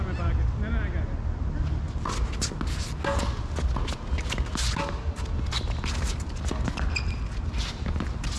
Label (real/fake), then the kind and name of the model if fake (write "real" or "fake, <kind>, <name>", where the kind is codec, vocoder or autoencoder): real